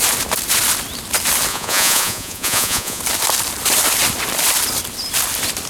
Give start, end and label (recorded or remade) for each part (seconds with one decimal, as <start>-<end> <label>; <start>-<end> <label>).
0.0-1.5 recorded; 1.5-3.0 remade; 3.0-5.7 recorded